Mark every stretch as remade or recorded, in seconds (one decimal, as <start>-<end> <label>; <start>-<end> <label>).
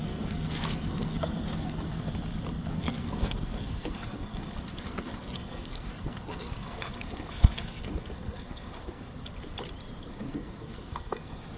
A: 0.0-2.1 remade; 2.1-2.7 recorded; 2.7-9.2 remade; 9.2-10.0 recorded; 10.0-11.6 remade